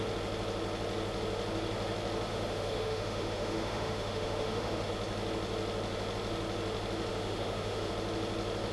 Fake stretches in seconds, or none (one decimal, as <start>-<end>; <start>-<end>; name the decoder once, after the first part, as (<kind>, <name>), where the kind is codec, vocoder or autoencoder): 2.3-4.9 (autoencoder, DAC-VAE); 7.1-7.9